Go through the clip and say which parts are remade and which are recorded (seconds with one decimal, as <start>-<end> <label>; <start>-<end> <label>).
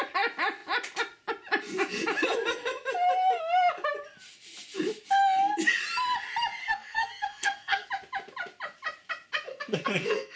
0.0-6.6 recorded; 6.6-7.9 remade; 7.9-9.5 recorded; 9.5-10.4 remade